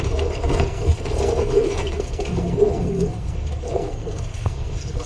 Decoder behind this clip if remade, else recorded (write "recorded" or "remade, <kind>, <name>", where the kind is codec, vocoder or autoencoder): remade, codec, SNAC